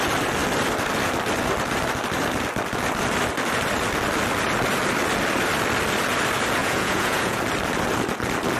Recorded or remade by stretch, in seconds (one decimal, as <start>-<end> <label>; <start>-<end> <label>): 0.0-6.6 recorded; 6.6-7.4 remade; 7.4-8.6 recorded